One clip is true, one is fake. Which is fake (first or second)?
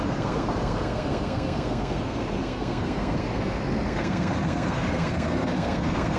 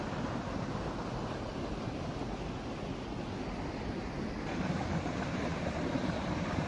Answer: first